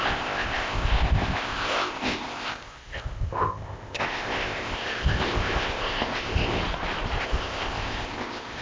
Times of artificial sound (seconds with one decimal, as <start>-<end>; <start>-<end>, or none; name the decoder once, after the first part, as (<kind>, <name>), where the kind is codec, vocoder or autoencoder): 0.0-6.6 (codec, ZipCodec); 7.2-8.6